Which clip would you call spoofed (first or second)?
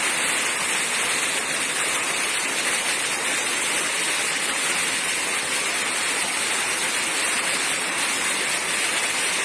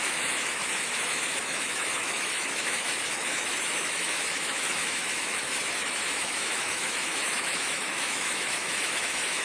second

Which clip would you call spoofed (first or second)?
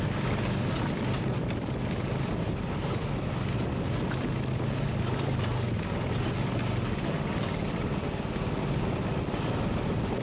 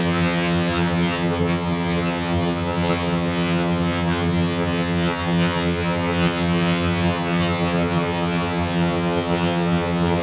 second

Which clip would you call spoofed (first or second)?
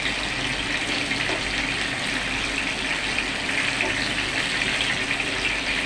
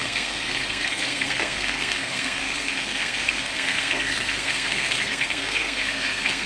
second